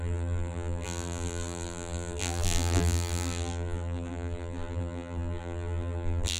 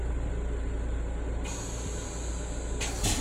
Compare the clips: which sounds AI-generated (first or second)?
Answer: first